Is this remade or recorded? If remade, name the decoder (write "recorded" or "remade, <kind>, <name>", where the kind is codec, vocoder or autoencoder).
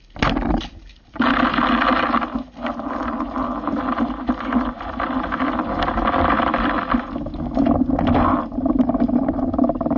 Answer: recorded